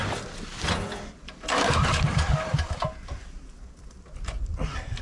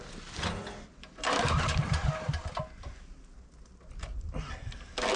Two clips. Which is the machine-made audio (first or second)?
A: first